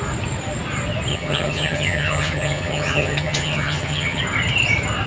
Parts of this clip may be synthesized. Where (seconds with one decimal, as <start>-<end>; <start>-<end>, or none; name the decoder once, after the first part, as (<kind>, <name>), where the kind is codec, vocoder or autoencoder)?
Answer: 1.1-4.2 (vocoder, HiFi-GAN)